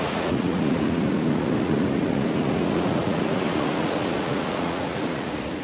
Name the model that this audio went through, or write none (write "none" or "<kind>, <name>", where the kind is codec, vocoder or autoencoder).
vocoder, Vocos